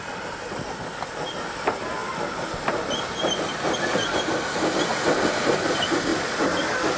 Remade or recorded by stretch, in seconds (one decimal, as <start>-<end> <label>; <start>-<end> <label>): 0.0-7.0 recorded